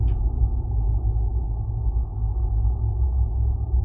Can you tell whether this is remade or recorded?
recorded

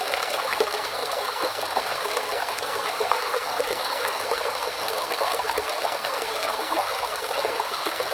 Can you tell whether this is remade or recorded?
remade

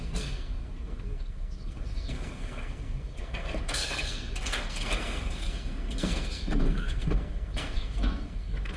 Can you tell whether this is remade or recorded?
remade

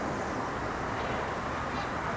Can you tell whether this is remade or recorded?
recorded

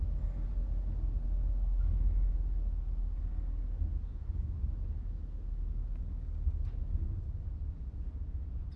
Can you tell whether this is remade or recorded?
recorded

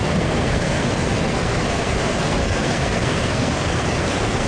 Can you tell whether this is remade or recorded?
remade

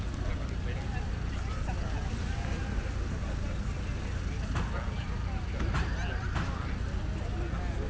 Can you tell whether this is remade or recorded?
recorded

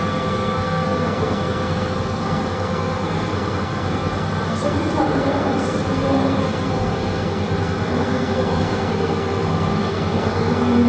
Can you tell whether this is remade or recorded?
remade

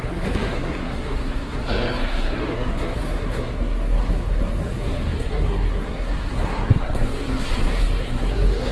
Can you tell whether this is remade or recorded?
remade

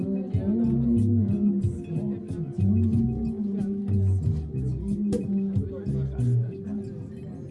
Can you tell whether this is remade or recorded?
recorded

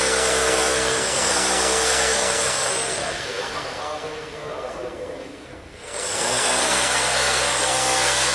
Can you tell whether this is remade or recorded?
remade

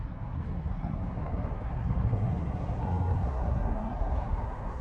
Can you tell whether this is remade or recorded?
remade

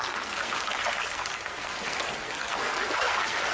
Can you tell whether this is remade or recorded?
remade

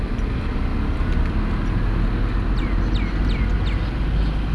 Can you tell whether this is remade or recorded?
recorded